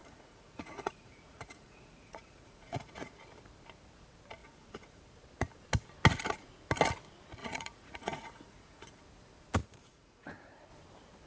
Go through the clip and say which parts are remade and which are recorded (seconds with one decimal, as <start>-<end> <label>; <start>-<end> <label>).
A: 0.0-3.1 remade; 3.1-4.4 recorded; 4.4-5.0 remade; 5.0-7.4 recorded; 7.4-9.0 remade; 9.0-9.6 recorded; 9.6-10.7 remade; 10.7-11.3 recorded

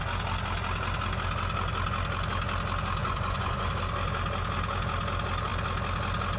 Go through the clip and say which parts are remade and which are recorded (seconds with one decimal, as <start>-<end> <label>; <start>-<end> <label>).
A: 0.0-3.0 recorded; 3.0-3.7 remade; 3.7-6.4 recorded